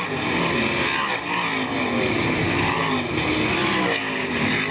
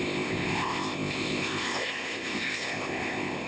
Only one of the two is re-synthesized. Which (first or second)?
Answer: second